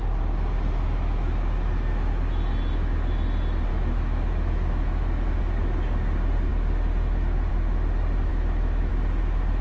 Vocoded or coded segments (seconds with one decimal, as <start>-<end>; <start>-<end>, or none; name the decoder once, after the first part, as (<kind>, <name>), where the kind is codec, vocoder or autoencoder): 3.7-5.4 (autoencoder, DAC-VAE); 8.3-8.9